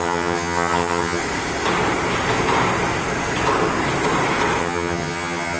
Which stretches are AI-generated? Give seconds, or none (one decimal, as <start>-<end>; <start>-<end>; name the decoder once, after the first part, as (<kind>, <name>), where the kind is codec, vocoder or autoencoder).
0.0-1.2 (vocoder, HiFi-GAN); 4.6-5.6